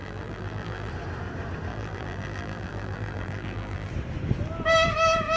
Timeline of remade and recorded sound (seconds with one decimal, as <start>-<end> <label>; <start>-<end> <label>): 0.0-0.9 remade; 0.9-1.7 recorded; 1.7-3.9 remade; 3.9-5.4 recorded